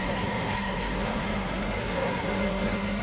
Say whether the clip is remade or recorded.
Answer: remade